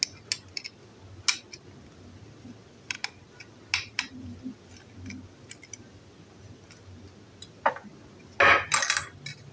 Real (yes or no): yes